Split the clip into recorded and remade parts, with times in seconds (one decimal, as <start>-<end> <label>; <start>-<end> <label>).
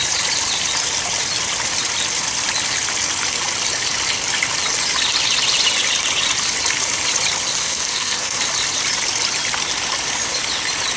0.0-7.6 recorded; 7.6-8.4 remade; 8.4-11.0 recorded